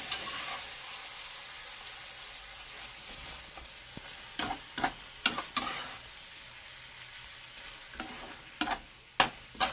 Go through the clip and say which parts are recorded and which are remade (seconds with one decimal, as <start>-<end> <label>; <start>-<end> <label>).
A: 0.0-9.7 recorded